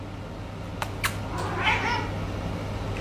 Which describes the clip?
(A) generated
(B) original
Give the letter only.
B